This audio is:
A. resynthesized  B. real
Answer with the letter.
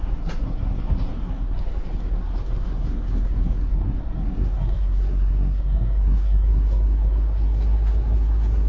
A